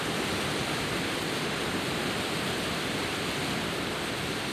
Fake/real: fake